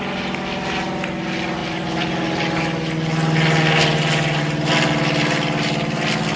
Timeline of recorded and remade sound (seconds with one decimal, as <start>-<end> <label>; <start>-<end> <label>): 0.0-6.4 recorded